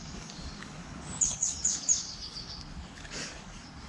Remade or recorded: remade